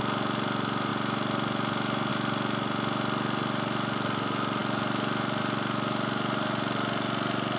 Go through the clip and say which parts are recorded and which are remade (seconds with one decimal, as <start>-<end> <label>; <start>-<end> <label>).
0.0-7.6 recorded